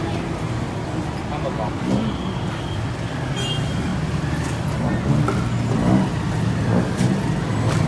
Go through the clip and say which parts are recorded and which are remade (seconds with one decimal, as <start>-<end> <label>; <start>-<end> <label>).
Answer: 0.0-7.9 recorded